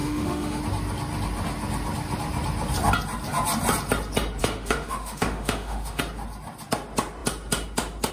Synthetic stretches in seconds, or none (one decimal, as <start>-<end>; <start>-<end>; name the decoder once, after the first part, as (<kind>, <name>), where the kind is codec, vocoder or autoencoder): 0.0-0.6 (autoencoder, DAC-VAE); 4.4-6.0

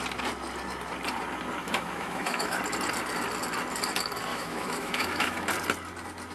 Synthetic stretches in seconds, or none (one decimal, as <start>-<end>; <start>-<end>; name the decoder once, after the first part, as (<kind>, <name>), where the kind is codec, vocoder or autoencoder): 1.6-2.6 (autoencoder, DAC-VAE); 4.3-5.5

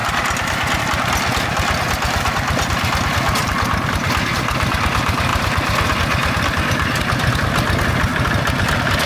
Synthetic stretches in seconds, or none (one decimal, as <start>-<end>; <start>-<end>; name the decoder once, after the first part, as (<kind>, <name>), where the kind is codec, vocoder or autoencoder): none

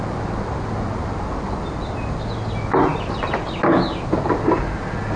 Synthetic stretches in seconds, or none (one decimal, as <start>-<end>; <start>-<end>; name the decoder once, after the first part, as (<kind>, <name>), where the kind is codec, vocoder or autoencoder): none

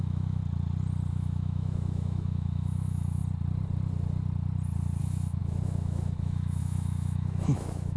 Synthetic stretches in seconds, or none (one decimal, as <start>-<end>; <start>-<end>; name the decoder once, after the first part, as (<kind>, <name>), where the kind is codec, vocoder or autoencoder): 0.0-0.4 (autoencoder, DAC-VAE); 1.1-3.2; 5.0-8.0